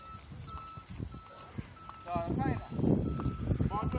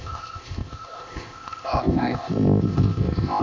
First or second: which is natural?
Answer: first